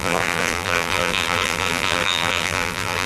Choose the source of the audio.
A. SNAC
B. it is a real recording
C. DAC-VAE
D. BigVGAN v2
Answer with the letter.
D